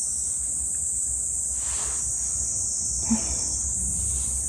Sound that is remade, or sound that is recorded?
recorded